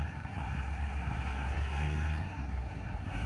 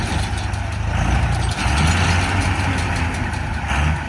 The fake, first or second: first